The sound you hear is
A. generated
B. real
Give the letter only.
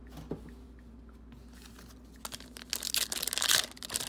B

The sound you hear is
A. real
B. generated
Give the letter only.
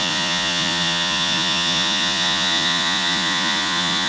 B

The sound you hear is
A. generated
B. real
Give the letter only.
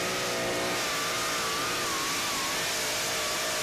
B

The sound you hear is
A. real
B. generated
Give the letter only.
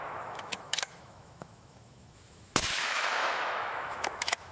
B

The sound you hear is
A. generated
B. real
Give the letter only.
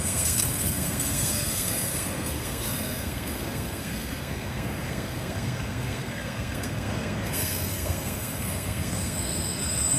A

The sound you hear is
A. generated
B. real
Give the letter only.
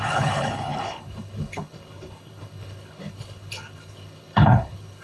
A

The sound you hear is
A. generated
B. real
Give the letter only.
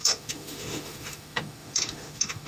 A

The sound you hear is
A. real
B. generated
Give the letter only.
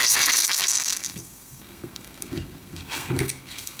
B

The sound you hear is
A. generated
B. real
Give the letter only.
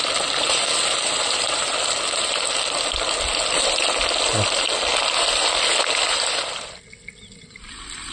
B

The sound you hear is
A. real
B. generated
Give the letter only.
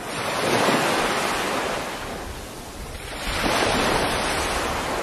A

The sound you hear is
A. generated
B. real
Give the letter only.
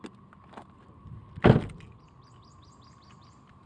B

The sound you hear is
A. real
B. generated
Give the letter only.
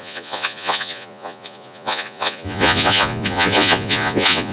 B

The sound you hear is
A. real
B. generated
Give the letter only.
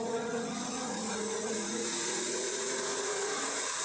B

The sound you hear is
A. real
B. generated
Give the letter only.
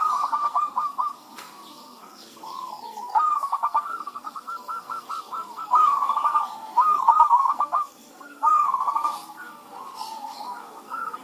B